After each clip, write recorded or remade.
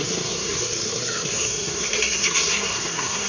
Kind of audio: remade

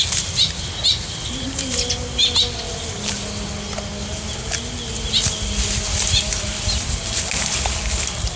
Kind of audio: recorded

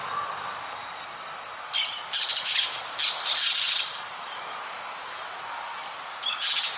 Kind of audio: recorded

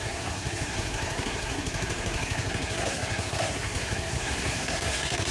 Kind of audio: remade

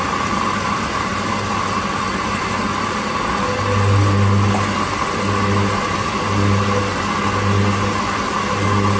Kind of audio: recorded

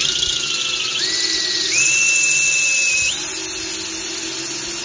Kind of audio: recorded